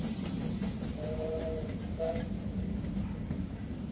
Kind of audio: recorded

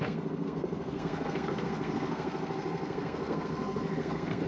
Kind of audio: remade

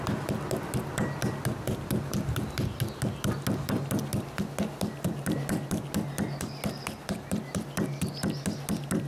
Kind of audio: recorded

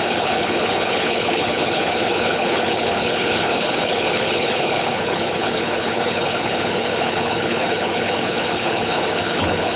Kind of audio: remade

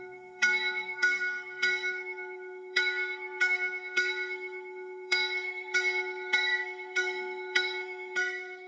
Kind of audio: remade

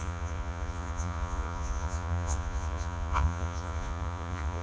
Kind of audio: remade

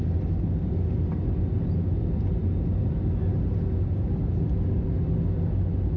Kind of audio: recorded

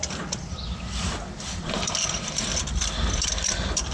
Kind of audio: remade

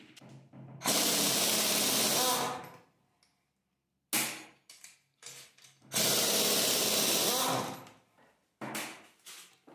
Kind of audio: recorded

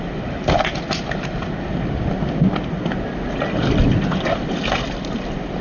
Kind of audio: recorded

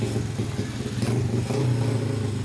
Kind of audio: recorded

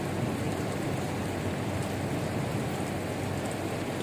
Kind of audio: recorded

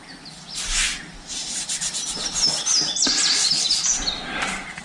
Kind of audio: recorded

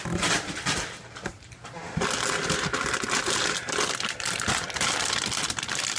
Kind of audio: recorded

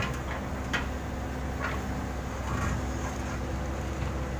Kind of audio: recorded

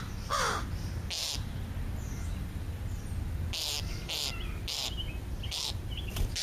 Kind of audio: recorded